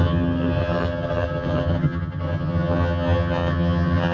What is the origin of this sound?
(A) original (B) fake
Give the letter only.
B